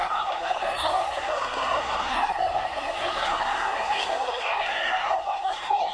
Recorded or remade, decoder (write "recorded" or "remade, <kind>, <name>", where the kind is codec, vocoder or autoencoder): remade, codec, SNAC